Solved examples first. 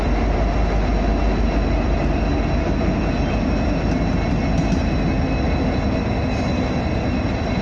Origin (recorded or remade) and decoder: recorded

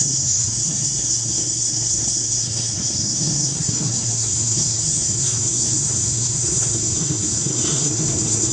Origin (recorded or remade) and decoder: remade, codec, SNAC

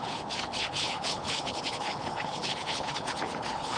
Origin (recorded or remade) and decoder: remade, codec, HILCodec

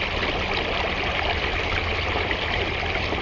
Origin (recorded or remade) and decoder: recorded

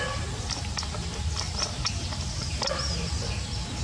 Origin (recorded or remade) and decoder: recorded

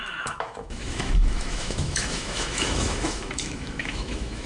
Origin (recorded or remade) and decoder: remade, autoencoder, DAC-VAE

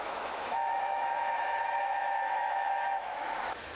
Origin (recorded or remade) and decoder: remade, autoencoder, DAC-VAE